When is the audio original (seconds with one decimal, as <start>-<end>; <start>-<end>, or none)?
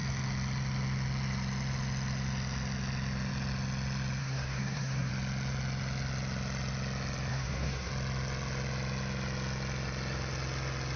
0.0-4.2; 5.1-7.3; 7.9-11.0